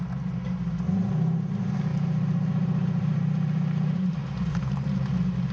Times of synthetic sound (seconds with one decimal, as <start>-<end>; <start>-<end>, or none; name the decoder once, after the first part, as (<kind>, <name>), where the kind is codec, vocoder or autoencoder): 1.9-5.5 (vocoder, BigVGAN v2)